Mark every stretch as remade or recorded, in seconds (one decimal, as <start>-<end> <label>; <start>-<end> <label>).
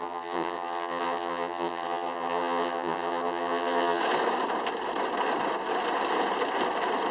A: 0.0-4.0 remade; 4.0-7.1 recorded